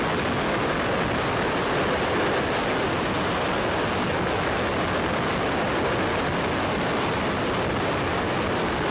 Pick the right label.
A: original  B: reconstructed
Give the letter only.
A